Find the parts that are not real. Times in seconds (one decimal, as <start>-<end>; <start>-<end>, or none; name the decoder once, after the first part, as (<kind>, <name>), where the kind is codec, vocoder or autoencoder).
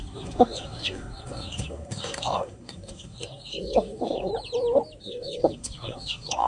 0.0-4.3 (codec, SNAC); 5.0-6.5